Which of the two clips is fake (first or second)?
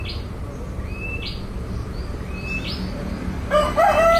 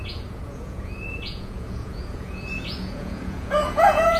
second